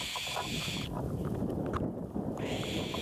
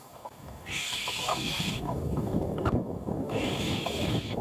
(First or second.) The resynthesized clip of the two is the second